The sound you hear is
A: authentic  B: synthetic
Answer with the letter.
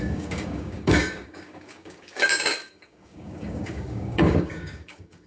B